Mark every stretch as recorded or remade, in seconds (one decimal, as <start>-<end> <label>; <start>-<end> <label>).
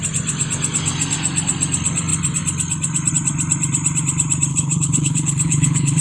0.0-4.5 recorded; 4.5-6.0 remade